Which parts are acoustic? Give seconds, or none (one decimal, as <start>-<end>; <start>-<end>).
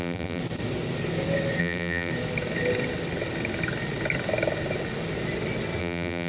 0.4-1.6; 2.1-5.8